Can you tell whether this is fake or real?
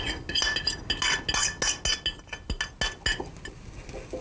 real